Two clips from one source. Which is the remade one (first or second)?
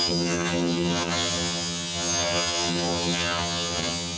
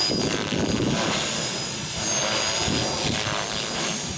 first